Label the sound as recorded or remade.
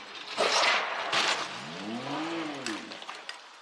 recorded